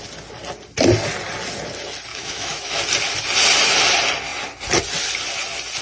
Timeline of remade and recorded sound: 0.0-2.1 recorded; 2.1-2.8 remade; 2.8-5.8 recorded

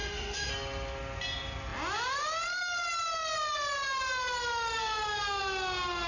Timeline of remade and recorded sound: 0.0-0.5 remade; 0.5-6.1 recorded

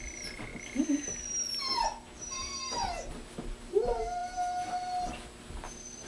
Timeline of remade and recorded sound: 0.0-6.1 recorded

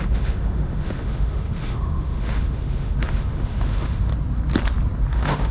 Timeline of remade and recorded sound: 0.0-4.1 remade; 4.1-5.1 recorded; 5.1-5.5 remade